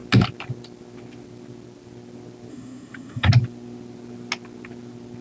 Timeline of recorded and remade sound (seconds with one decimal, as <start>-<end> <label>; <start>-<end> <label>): 0.0-2.5 recorded; 2.5-3.3 remade; 3.3-5.2 recorded